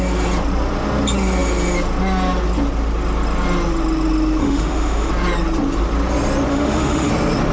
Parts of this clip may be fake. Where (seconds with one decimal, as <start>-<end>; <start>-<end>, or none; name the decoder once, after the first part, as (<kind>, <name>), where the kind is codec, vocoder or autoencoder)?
4.4-5.1 (autoencoder, DAC-VAE); 6.5-7.1